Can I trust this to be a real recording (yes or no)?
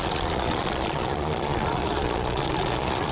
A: no